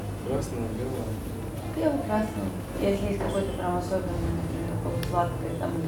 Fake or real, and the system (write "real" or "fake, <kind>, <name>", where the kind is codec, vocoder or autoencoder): real